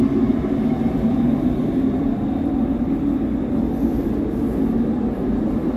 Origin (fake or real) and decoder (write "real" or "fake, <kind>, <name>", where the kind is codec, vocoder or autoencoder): fake, vocoder, BigVGAN v2